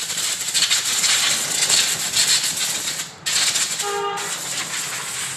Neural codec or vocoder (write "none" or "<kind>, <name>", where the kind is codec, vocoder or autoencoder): none